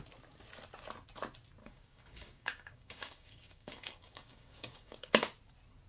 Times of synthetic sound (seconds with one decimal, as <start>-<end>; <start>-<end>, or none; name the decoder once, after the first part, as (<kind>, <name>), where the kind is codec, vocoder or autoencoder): 1.6-5.1 (codec, DAC)